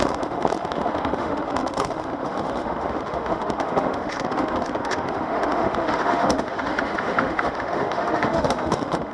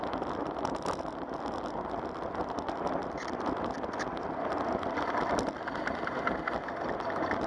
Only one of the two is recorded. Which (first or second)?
second